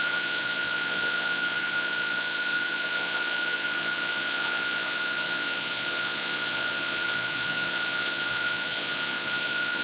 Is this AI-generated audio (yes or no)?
yes